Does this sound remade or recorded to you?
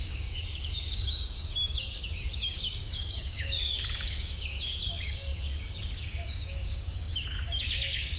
remade